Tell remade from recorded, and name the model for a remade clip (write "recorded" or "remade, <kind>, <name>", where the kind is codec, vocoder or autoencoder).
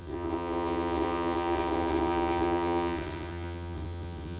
remade, vocoder, WaveNeXt